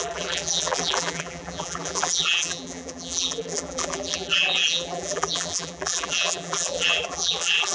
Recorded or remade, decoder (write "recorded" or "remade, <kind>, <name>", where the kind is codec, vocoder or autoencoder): remade, vocoder, BigVGAN v2